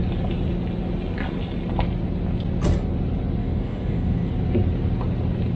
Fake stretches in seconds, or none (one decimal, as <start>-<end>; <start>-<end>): 3.4-4.3